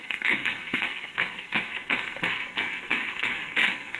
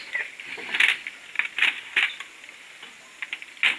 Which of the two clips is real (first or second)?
second